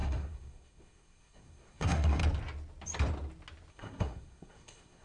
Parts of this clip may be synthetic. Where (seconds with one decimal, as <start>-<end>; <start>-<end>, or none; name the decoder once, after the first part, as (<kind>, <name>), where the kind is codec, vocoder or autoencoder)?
0.0-2.2 (codec, SNAC); 3.7-5.0